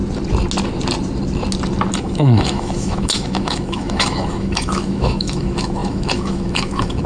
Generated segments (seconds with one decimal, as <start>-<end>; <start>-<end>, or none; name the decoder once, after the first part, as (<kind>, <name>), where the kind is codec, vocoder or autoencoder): 2.0-7.1 (autoencoder, DAC-VAE)